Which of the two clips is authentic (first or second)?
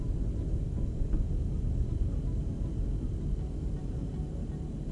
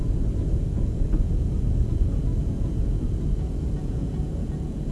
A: first